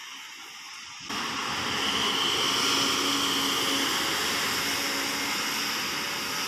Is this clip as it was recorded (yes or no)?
yes